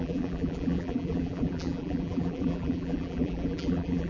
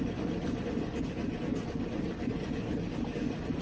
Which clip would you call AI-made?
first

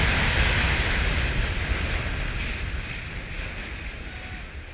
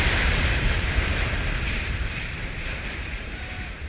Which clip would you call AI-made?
second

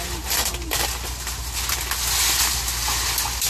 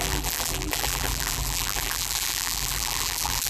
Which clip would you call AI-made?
second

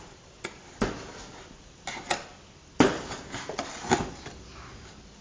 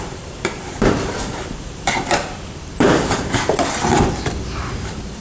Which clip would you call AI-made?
second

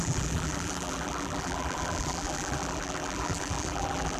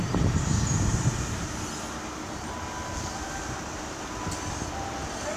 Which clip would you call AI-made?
first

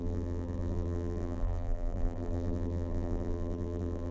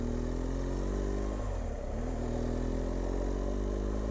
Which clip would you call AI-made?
first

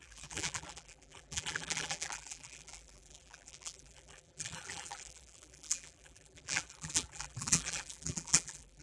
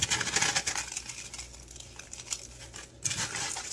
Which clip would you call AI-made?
first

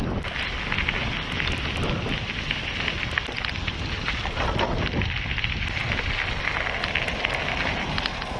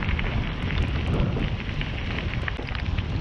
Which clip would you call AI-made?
second